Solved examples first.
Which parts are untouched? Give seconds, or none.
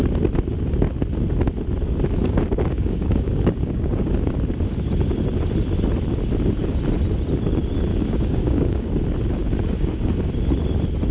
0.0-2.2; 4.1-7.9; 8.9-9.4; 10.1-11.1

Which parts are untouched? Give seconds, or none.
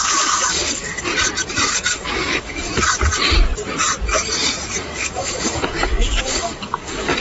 1.1-1.7; 2.7-4.8